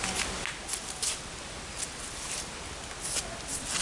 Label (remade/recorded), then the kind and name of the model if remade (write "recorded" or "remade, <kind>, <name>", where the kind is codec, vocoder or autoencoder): recorded